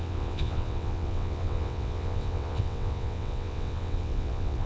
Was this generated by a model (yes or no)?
yes